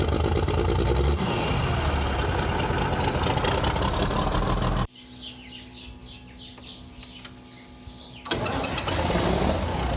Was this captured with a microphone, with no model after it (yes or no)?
yes